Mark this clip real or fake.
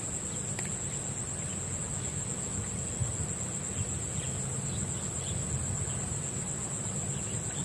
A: real